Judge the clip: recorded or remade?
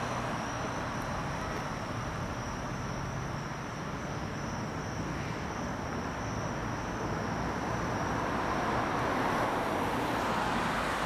recorded